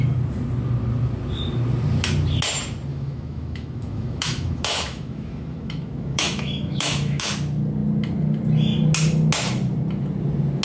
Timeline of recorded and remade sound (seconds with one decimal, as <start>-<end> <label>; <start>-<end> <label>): 0.0-2.9 recorded; 2.9-7.3 remade; 7.3-10.6 recorded